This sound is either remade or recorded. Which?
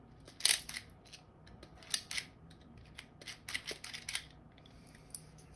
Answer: recorded